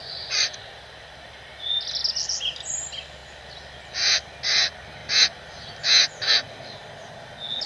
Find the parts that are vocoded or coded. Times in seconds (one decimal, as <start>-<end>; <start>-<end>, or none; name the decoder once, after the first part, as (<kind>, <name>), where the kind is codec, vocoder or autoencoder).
0.0-0.7 (vocoder, Vocos)